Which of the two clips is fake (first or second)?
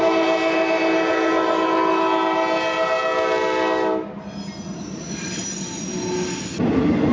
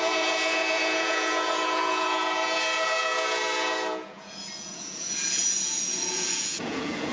second